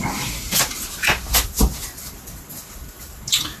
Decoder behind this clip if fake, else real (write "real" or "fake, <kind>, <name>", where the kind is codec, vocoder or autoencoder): real